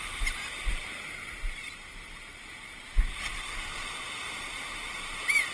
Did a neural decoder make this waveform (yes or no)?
yes